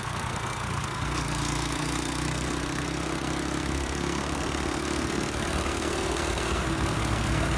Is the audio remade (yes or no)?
yes